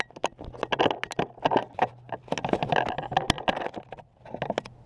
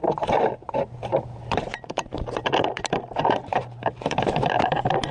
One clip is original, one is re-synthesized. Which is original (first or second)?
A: first